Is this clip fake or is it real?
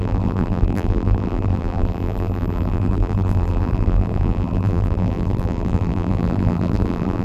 fake